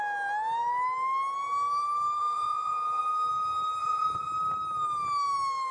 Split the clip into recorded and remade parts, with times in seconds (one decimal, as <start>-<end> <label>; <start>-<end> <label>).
0.0-2.2 recorded; 2.2-3.0 remade; 3.0-3.8 recorded; 3.8-4.3 remade; 4.3-5.7 recorded